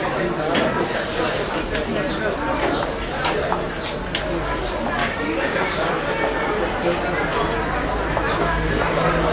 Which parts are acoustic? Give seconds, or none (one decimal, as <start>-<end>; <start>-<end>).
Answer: 0.0-5.0; 5.9-9.3